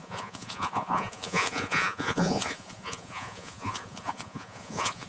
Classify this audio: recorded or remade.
remade